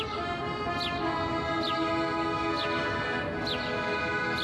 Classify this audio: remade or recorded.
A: recorded